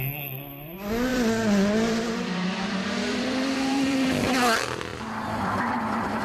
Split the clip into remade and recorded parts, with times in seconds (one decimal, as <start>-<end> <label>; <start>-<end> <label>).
0.0-1.1 recorded; 1.1-4.3 remade; 4.3-4.9 recorded; 4.9-5.8 remade; 5.8-6.2 recorded